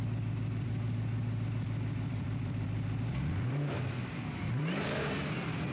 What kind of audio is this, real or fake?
fake